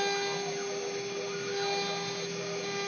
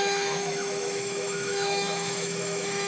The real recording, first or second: first